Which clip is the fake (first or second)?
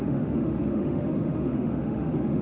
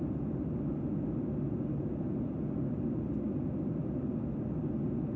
first